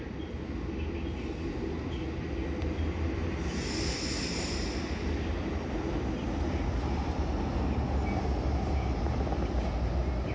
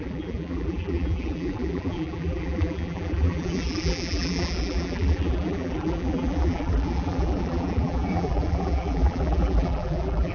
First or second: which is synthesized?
second